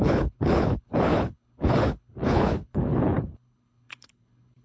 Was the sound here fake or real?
fake